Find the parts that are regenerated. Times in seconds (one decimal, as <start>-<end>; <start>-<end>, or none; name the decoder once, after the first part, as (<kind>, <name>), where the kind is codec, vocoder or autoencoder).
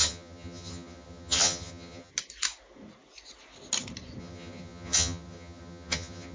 0.0-2.1 (vocoder, HiFi-GAN); 4.2-6.3